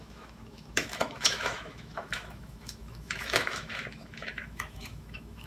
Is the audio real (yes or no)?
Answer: no